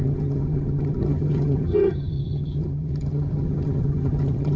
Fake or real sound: fake